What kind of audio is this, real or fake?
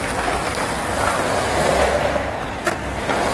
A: real